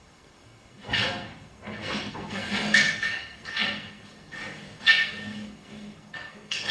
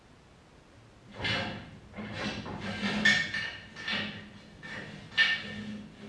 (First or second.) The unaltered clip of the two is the second